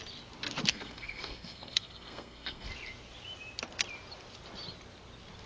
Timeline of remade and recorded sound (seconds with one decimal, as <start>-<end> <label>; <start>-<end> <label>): 0.0-0.7 recorded; 0.7-2.7 remade; 2.7-5.5 recorded